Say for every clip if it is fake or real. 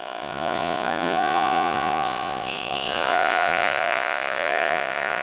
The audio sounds fake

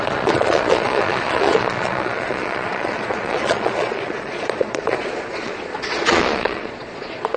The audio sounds fake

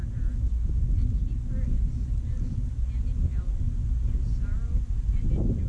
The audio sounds real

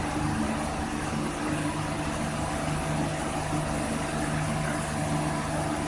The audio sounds real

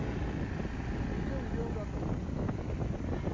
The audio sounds real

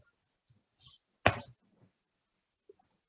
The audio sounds real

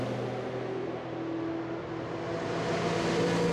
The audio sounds real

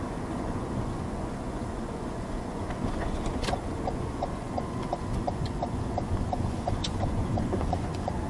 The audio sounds fake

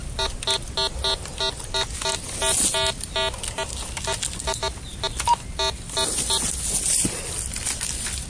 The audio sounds real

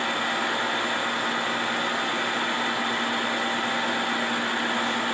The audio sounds real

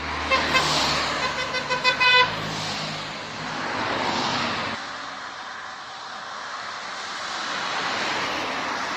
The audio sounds real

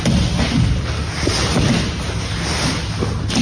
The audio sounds real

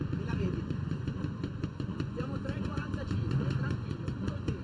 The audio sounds fake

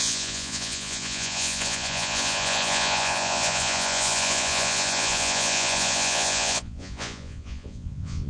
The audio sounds fake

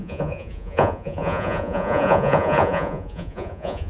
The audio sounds fake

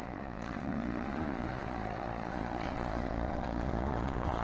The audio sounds fake